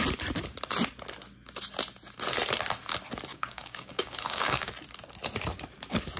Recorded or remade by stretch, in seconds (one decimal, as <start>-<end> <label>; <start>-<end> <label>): 0.0-3.3 recorded; 3.3-4.7 remade; 4.7-6.2 recorded